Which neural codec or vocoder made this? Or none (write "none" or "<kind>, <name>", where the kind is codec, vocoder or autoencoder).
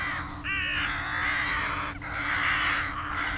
none